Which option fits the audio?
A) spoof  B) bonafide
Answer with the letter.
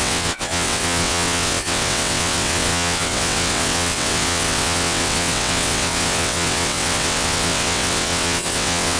A